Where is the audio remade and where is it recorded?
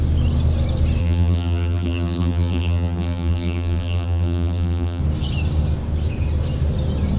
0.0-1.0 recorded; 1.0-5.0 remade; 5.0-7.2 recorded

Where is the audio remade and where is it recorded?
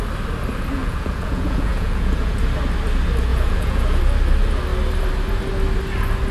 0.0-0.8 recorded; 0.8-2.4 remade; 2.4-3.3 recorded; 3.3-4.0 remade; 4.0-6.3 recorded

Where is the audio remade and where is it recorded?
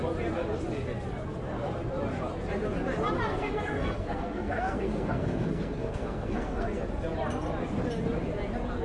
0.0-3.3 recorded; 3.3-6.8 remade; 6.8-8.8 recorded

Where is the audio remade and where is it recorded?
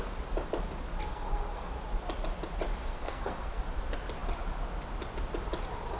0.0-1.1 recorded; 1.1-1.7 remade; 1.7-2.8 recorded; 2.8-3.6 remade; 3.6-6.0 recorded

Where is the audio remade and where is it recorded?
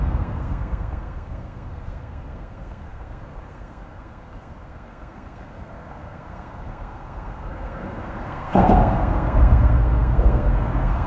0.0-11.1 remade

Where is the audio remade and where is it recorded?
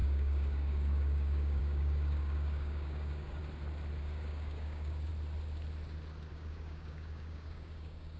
0.0-3.4 remade; 3.4-4.0 recorded; 4.0-5.1 remade; 5.1-6.3 recorded; 6.3-8.2 remade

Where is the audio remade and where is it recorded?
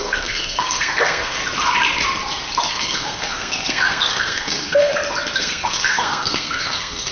0.0-1.4 remade; 1.4-2.7 recorded; 2.7-4.9 remade; 4.9-5.4 recorded; 5.4-7.1 remade